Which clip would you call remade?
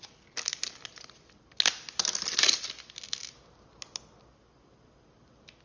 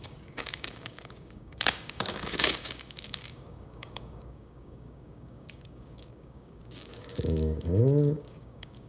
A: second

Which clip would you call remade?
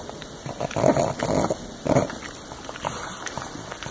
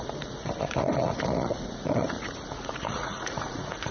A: second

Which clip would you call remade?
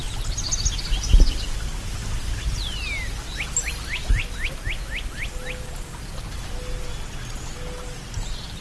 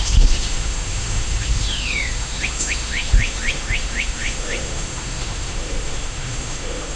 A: second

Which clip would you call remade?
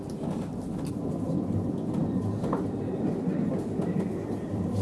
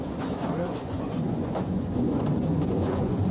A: second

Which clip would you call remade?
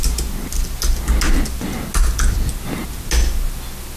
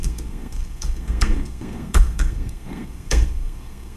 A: second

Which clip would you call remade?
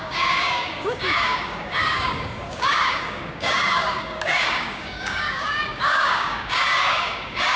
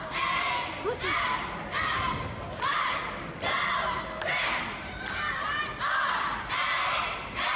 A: first